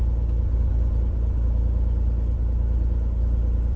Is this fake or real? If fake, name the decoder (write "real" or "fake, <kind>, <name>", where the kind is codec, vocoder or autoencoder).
real